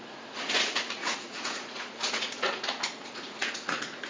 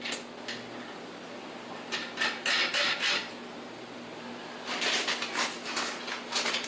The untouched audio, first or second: second